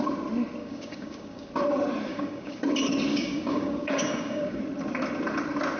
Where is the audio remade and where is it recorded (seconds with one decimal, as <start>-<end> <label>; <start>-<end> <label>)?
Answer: 0.0-0.6 recorded; 0.6-1.5 remade; 1.5-2.1 recorded; 2.1-2.6 remade; 2.6-3.1 recorded; 3.1-4.6 remade; 4.6-5.8 recorded